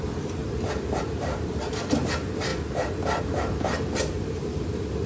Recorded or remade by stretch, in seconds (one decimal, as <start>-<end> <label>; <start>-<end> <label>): 0.0-0.4 remade; 0.4-0.9 recorded; 0.9-2.5 remade; 2.5-3.2 recorded; 3.2-5.1 remade